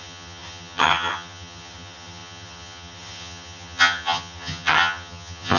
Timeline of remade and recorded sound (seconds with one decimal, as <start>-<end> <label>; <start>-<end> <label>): 0.0-5.6 remade